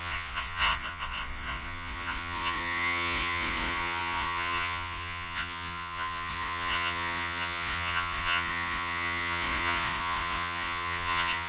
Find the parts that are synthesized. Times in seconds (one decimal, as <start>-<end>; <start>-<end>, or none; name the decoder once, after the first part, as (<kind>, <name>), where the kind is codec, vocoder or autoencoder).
0.0-11.5 (vocoder, Vocos)